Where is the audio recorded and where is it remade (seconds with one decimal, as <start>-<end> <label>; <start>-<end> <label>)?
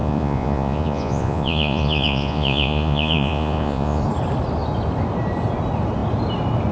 0.0-4.0 remade; 4.0-6.7 recorded